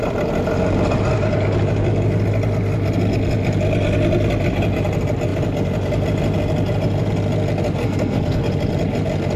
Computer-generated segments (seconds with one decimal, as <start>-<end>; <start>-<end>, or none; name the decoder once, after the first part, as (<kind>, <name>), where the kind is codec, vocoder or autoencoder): 7.8-8.4 (codec, SNAC)